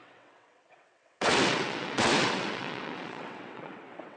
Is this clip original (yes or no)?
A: no